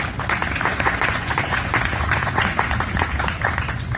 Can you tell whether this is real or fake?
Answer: fake